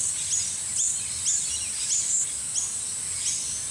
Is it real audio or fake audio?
real